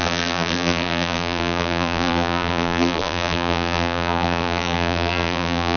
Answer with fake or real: fake